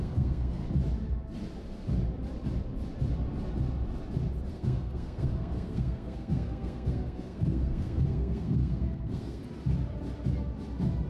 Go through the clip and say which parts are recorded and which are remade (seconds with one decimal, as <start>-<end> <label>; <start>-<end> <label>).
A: 0.0-0.6 remade; 0.6-4.5 recorded; 4.5-9.4 remade; 9.4-11.1 recorded